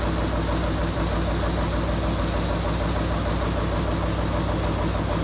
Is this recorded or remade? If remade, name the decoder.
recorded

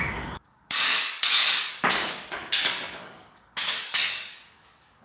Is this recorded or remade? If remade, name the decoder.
remade, codec, DAC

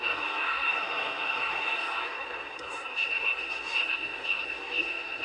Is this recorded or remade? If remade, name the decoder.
remade, codec, SNAC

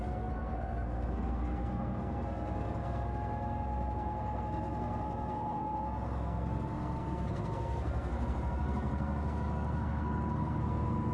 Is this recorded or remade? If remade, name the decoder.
remade, codec, SNAC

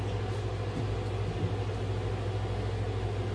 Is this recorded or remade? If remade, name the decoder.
recorded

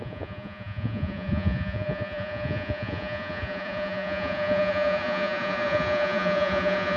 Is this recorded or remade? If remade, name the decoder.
remade, vocoder, Vocos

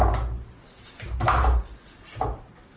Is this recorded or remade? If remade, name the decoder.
recorded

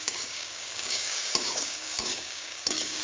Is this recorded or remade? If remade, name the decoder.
remade, codec, DAC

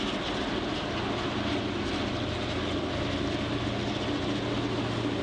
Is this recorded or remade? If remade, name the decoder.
recorded